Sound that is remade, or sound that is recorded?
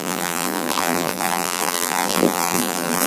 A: remade